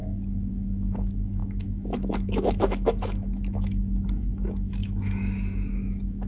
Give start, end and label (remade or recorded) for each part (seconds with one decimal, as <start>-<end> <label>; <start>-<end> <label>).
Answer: 0.0-6.3 remade